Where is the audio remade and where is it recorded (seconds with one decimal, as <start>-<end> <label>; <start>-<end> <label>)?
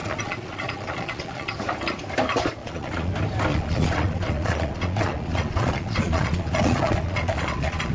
0.0-1.5 remade; 1.5-2.6 recorded; 2.6-3.1 remade; 3.1-3.5 recorded; 3.5-7.9 remade